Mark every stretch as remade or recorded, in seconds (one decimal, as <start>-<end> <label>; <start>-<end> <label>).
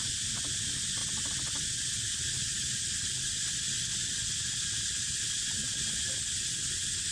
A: 0.0-7.1 recorded